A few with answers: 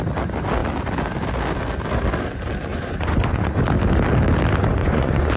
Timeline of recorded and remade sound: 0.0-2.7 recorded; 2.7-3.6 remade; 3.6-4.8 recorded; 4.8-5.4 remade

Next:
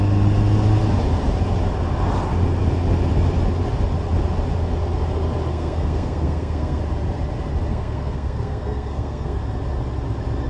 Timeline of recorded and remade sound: 0.0-5.5 recorded; 5.5-6.8 remade; 6.8-7.7 recorded; 7.7-9.4 remade; 9.4-10.5 recorded